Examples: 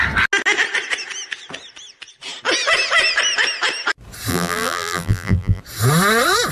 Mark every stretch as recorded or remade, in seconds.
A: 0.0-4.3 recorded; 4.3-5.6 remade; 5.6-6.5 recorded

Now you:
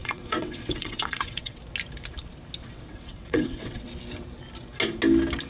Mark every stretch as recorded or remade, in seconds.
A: 0.0-1.6 remade; 1.6-2.6 recorded; 2.6-3.9 remade; 3.9-5.5 recorded

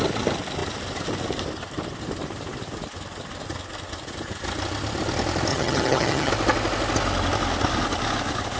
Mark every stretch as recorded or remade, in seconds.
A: 0.0-5.5 recorded; 5.5-6.3 remade; 6.3-8.6 recorded

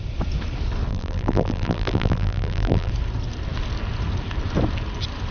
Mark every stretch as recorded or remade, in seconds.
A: 0.0-0.9 recorded; 0.9-2.9 remade; 2.9-5.3 recorded